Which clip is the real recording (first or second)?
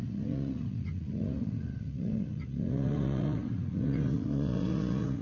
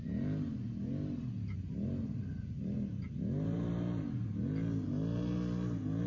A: second